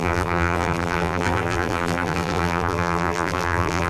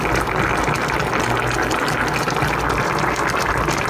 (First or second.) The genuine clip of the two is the second